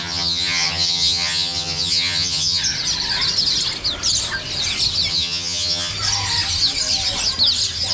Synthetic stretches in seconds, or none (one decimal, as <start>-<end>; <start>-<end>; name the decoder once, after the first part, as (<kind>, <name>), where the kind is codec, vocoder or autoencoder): 0.0-2.6 (vocoder, HiFi-GAN); 5.1-5.9